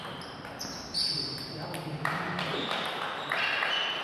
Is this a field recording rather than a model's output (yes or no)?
yes